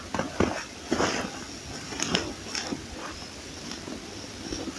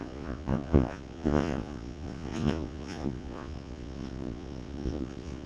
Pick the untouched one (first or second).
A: first